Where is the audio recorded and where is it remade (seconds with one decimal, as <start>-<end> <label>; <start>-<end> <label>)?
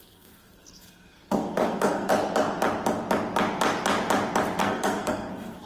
0.0-2.1 remade; 2.1-4.6 recorded; 4.6-5.7 remade